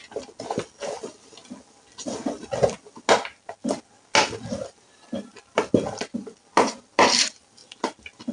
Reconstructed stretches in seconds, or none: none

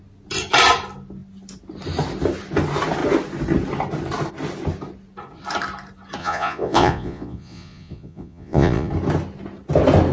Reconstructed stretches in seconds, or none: 6.2-8.9 (vocoder, Vocos)

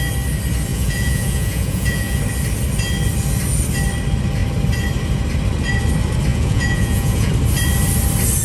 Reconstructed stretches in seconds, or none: 0.7-2.2 (vocoder, Vocos); 6.3-7.3

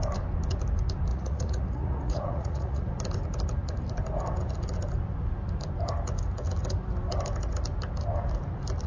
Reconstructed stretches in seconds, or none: 1.1-2.9 (vocoder, Vocos)

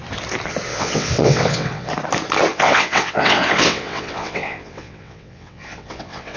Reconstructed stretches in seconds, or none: 0.7-1.9 (vocoder, WaveNeXt); 2.5-6.4

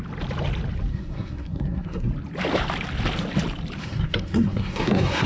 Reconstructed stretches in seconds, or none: 0.9-2.1 (codec, SNAC); 3.8-5.3

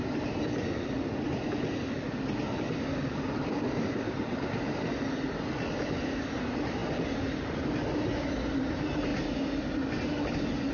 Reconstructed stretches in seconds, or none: none